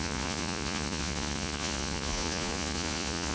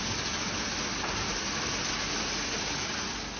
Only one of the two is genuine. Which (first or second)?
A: second